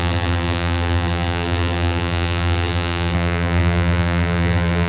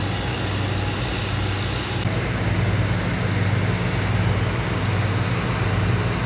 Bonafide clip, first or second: second